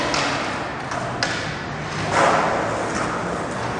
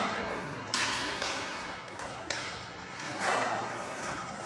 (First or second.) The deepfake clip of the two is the second